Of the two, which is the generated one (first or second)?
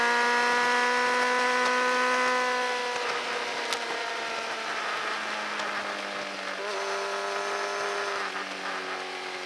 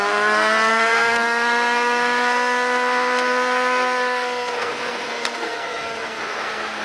second